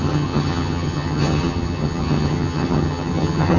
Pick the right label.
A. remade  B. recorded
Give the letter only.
A